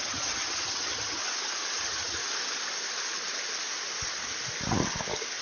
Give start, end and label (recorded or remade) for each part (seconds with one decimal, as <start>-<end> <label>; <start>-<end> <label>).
0.0-1.2 remade; 1.2-1.8 recorded; 1.8-2.2 remade; 2.2-5.4 recorded